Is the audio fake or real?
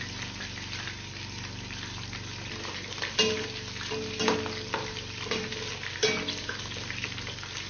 real